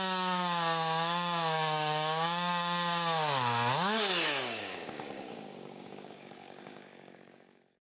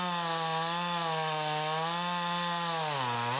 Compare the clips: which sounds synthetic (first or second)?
first